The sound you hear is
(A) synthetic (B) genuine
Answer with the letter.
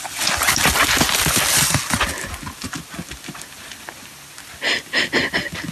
B